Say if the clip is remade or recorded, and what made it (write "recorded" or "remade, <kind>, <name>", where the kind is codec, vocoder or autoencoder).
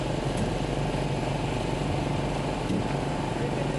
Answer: recorded